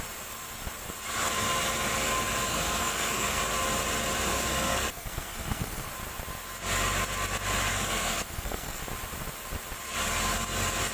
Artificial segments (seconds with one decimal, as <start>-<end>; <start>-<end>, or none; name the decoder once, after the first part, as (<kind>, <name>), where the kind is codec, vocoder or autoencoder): 2.5-3.4 (codec, SNAC); 4.3-5.9; 7.7-8.8